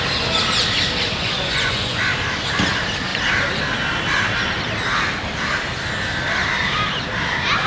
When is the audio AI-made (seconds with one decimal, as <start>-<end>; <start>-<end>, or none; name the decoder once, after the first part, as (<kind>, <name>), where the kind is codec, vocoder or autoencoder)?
1.2-2.0 (vocoder, Vocos)

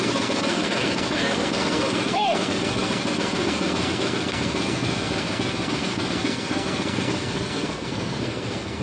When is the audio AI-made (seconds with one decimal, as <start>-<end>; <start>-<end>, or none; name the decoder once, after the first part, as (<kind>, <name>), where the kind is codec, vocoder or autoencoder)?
0.0-8.8 (codec, SNAC)

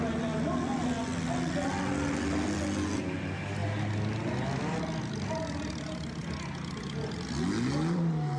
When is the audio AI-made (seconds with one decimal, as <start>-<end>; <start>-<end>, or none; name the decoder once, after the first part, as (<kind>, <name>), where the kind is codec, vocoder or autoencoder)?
none

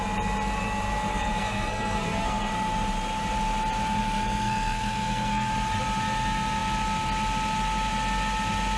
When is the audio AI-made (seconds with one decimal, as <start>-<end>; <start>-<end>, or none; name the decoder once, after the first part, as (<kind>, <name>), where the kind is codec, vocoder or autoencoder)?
1.1-2.5 (codec, SNAC); 4.0-5.5

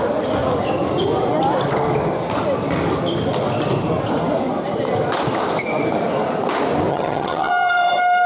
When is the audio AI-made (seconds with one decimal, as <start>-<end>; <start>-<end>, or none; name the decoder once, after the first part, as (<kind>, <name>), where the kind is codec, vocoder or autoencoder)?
6.9-7.5 (vocoder, HiFi-GAN)

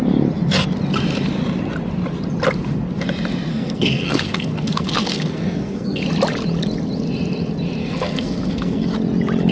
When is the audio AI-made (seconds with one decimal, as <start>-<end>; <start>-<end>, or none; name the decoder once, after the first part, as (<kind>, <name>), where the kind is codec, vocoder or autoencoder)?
3.5-6.0 (codec, SNAC); 7.8-8.8